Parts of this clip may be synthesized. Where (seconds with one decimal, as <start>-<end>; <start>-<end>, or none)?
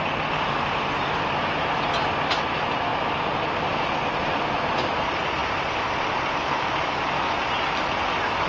none